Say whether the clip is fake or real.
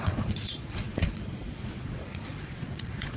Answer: fake